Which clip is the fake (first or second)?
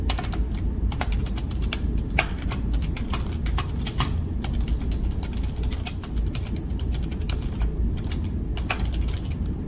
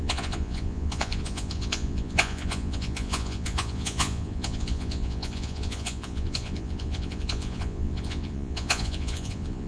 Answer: second